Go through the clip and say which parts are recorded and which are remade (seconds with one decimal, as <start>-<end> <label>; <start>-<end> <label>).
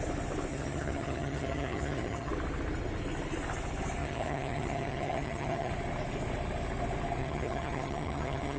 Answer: 0.0-0.5 recorded; 0.5-2.3 remade; 2.3-4.0 recorded; 4.0-5.7 remade; 5.7-7.2 recorded; 7.2-8.6 remade